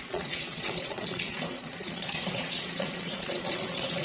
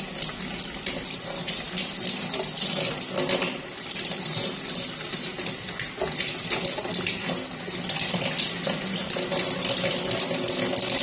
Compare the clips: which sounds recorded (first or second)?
second